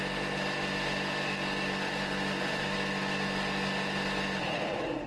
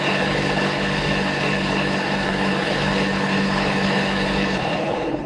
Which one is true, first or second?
first